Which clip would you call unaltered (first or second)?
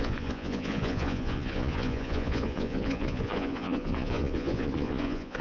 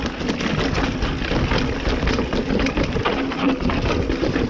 second